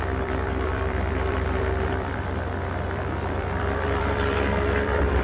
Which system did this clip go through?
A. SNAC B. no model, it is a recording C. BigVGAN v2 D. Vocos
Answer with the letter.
C